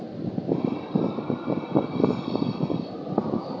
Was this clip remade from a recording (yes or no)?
no